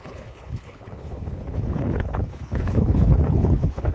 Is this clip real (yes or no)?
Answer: no